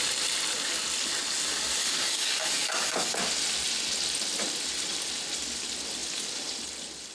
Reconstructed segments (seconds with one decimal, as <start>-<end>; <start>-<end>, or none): 1.8-3.2